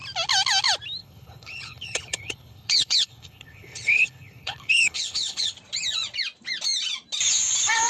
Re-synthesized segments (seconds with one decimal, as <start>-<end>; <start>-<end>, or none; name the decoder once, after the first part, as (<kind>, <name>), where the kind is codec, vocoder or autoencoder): 1.0-5.5 (codec, HILCodec)